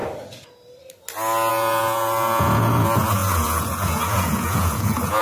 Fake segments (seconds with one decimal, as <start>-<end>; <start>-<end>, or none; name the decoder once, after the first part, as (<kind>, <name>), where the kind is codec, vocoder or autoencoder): 1.5-5.2 (vocoder, Vocos)